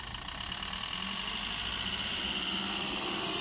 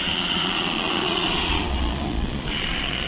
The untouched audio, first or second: first